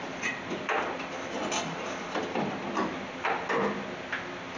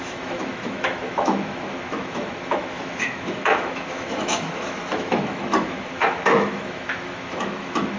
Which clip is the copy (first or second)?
second